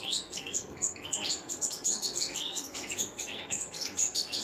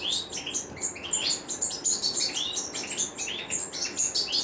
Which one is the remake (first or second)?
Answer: first